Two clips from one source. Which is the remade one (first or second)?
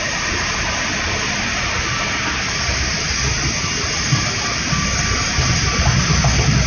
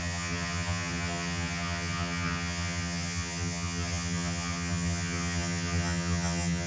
second